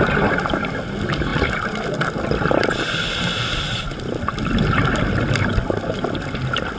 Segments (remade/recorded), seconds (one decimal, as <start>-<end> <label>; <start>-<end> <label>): 0.0-6.8 recorded